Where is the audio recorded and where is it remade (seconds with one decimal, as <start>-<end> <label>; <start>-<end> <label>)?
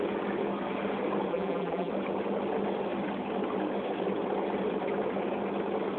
0.0-1.3 recorded; 1.3-1.9 remade; 1.9-6.0 recorded